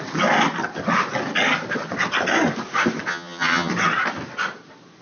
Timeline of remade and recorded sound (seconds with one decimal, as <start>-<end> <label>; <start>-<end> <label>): 0.0-3.1 recorded; 3.1-3.7 remade; 3.7-5.0 recorded